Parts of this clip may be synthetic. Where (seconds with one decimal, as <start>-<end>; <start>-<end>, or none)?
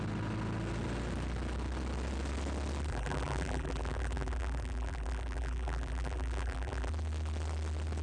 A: 2.9-6.9